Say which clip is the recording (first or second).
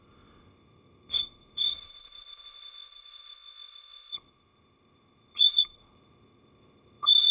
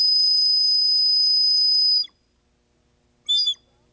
second